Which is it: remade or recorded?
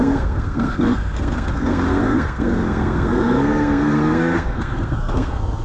remade